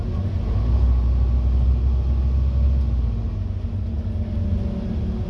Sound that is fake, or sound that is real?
real